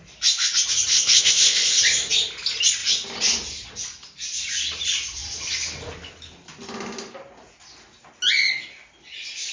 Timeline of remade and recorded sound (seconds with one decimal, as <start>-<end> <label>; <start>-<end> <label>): 0.0-0.9 recorded; 0.9-1.8 remade; 1.8-9.5 recorded